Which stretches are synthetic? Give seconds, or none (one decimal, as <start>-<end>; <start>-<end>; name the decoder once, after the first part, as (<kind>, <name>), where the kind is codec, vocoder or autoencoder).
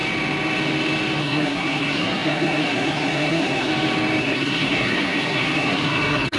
1.2-3.7 (codec, SNAC); 4.2-6.4